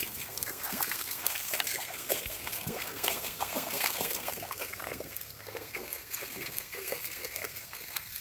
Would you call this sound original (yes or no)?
no